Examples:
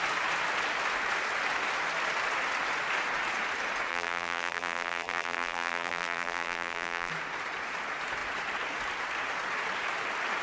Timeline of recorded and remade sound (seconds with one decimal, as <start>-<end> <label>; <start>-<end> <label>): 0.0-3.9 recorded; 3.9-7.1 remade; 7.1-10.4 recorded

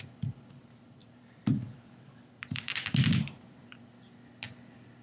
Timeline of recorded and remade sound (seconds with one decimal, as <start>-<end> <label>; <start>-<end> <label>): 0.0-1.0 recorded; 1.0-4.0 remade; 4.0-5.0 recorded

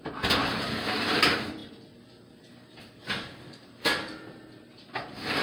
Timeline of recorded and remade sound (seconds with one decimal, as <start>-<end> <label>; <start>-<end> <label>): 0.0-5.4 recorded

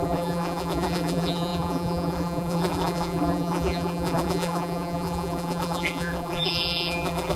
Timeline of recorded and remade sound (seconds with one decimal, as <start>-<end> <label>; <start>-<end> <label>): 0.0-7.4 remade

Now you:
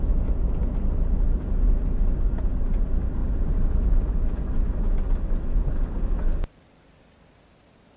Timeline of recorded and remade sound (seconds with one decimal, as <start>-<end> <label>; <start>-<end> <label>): 0.0-3.2 recorded; 3.2-4.3 remade; 4.3-8.0 recorded

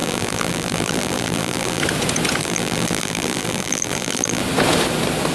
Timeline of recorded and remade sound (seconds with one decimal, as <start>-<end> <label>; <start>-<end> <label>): 0.0-1.8 remade; 1.8-2.4 recorded; 2.4-4.4 remade; 4.4-5.3 recorded